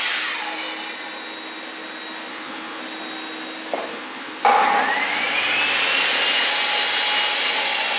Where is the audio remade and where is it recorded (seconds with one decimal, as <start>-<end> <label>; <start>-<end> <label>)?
0.0-2.3 recorded; 2.3-2.8 remade; 2.8-3.9 recorded; 3.9-4.4 remade; 4.4-8.0 recorded